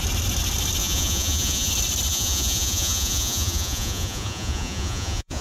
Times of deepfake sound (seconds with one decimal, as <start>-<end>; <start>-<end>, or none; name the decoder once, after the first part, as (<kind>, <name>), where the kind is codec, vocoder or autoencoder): 0.8-1.7 (vocoder, Vocos); 2.1-5.4